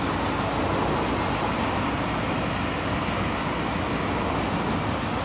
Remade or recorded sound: recorded